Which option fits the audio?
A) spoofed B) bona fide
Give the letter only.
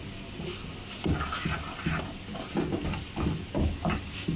B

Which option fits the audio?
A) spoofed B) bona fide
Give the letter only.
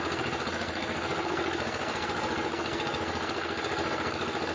A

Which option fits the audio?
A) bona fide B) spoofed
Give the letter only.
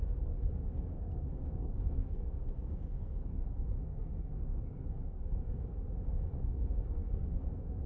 B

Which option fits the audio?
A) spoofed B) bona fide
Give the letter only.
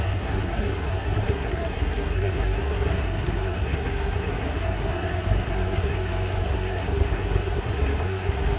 A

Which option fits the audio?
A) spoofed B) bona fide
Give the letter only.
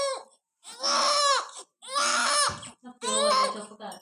B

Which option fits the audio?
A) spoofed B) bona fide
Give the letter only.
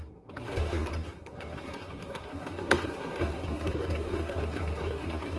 A